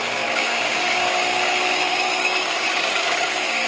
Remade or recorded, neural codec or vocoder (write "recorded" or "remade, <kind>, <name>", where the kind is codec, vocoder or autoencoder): remade, codec, DAC